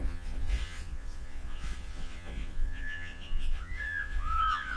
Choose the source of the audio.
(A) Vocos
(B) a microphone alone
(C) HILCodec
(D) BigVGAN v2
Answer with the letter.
A